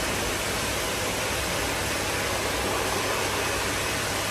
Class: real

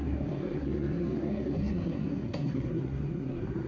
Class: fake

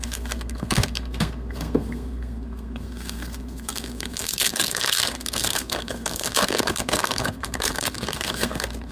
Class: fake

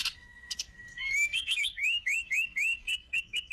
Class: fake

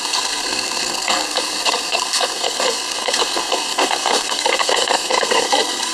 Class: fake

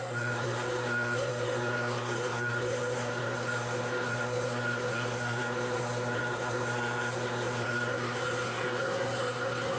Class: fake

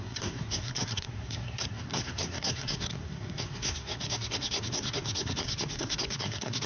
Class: fake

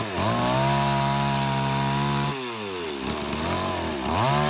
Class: real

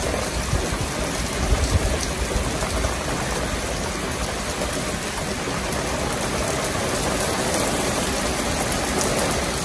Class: real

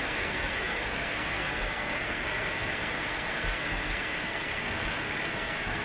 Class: fake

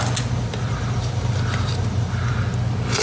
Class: real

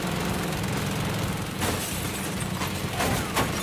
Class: real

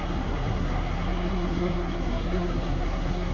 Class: fake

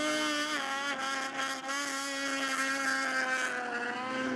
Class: real